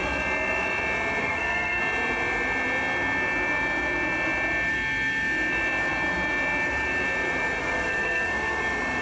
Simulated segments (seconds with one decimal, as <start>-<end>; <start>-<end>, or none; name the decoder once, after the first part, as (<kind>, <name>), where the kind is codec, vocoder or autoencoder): 1.2-1.8 (codec, SNAC); 7.6-8.6